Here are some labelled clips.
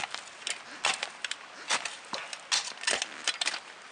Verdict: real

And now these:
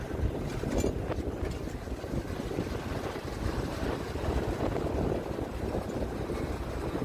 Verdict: real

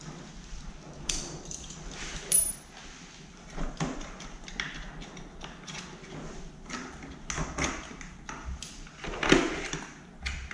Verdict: real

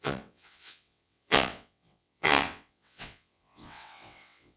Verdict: fake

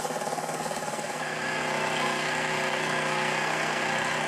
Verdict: fake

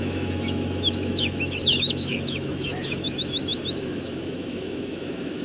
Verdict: fake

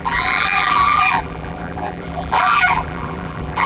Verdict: fake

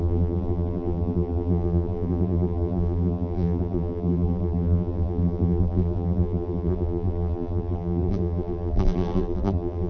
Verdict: fake